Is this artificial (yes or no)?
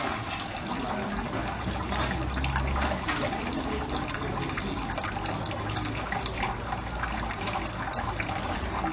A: no